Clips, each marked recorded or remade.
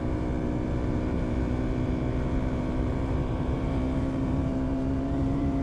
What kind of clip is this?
remade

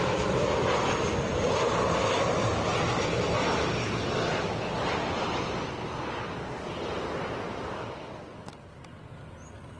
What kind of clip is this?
recorded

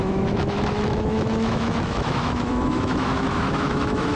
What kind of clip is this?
remade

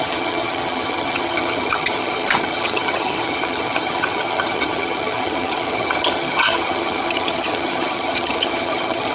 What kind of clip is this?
remade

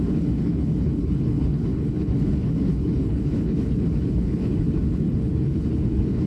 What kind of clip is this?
remade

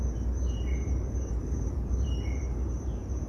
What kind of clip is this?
remade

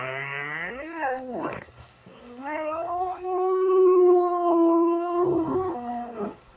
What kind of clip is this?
remade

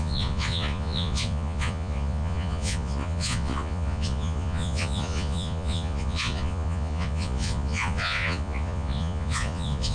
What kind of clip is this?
remade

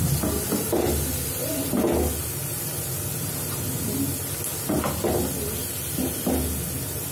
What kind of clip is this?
recorded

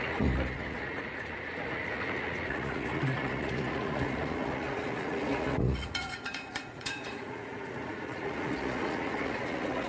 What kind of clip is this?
remade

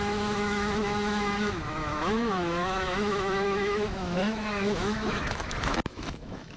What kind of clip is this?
remade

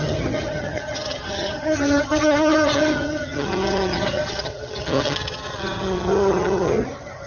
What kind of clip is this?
remade